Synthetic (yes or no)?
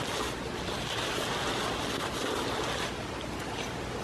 no